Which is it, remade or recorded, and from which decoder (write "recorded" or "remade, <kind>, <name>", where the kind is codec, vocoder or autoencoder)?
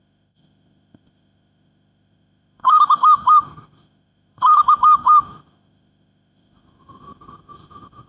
remade, autoencoder, DAC-VAE